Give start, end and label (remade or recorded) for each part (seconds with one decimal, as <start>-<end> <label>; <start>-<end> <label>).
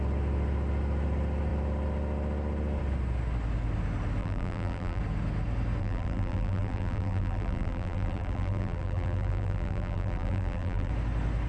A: 0.0-4.2 recorded; 4.2-5.0 remade; 5.0-5.8 recorded; 5.8-10.9 remade; 10.9-11.5 recorded